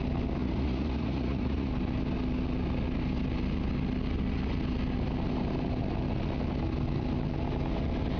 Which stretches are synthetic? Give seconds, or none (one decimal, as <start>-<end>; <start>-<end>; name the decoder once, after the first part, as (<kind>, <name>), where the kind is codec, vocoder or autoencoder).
0.4-1.7 (vocoder, Vocos)